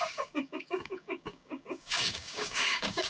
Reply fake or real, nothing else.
fake